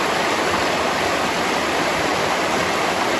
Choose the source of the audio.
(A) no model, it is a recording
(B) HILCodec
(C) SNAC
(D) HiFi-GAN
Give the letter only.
A